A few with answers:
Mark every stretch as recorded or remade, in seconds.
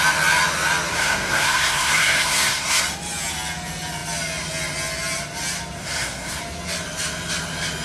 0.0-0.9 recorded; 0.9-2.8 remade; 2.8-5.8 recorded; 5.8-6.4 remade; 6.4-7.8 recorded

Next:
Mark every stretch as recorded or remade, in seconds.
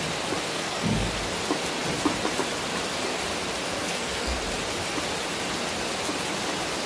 0.0-0.5 recorded; 0.5-1.1 remade; 1.1-3.6 recorded; 3.6-4.4 remade; 4.4-6.9 recorded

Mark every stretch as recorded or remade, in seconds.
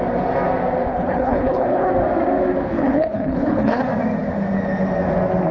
0.0-0.9 recorded; 0.9-1.9 remade; 1.9-2.7 recorded; 2.7-3.8 remade; 3.8-5.5 recorded